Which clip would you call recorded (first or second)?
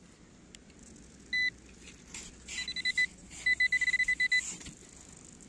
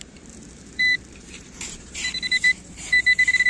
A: first